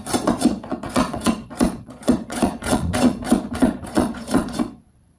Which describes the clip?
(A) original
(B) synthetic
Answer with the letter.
B